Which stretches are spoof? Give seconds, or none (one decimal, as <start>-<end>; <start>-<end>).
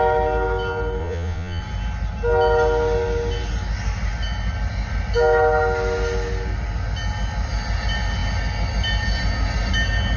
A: 1.0-1.6